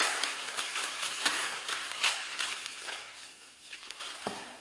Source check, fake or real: fake